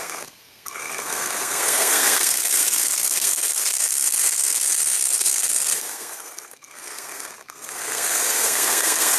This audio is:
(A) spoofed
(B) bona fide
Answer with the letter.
A